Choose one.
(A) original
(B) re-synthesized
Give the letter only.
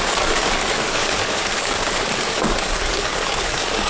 B